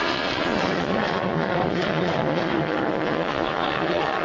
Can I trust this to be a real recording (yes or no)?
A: no